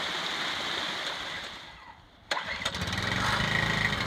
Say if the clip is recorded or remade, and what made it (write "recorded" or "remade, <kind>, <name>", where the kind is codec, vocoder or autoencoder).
recorded